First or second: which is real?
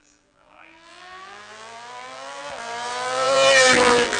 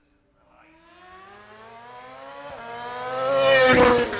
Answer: second